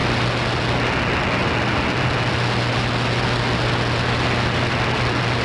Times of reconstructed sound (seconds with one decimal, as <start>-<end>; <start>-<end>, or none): none